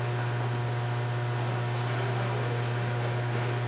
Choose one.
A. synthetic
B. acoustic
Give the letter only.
B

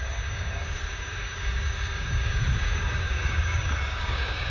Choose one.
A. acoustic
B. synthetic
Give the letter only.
B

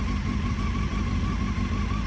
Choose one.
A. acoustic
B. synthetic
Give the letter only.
A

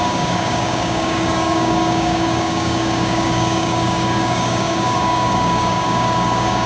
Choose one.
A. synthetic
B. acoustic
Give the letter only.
A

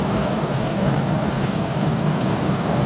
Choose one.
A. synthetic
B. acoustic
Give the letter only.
A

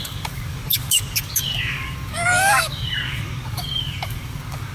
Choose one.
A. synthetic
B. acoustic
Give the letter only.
A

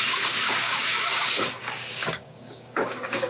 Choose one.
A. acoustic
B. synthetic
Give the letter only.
B